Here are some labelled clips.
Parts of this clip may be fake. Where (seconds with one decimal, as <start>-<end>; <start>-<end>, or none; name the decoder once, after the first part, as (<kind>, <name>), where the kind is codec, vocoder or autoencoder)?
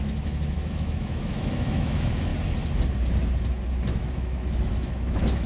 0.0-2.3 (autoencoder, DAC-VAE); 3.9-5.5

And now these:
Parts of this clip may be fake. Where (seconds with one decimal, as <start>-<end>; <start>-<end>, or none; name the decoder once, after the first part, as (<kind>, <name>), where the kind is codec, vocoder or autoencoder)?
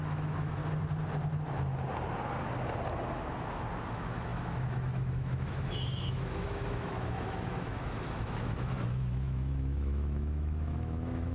0.0-0.6 (autoencoder, DAC-VAE); 3.9-11.3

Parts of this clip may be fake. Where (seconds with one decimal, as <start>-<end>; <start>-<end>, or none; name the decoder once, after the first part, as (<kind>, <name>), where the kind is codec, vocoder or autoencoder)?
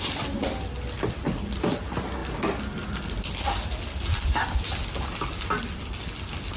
none